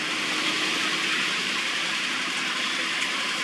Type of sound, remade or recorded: recorded